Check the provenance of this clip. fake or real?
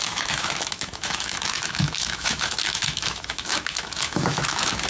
fake